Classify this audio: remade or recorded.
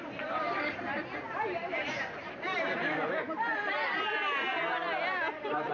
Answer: remade